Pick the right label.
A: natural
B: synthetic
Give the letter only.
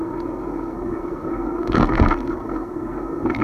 B